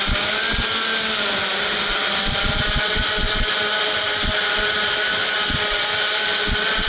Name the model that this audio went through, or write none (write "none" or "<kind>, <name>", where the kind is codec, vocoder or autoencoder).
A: none